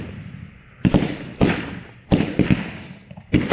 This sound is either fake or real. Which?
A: real